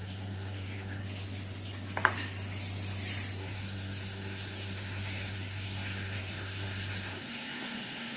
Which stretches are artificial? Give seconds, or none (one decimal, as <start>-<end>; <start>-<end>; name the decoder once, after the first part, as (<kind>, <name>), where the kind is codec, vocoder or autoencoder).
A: 0.0-1.0 (codec, SNAC); 3.4-8.2